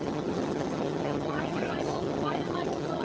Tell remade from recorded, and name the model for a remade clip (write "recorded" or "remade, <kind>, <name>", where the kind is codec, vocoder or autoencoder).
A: remade, vocoder, HiFi-GAN